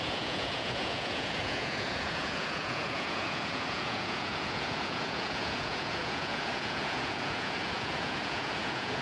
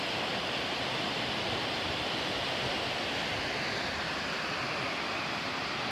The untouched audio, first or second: second